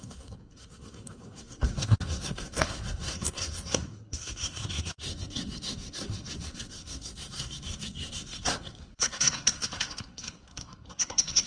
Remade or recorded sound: remade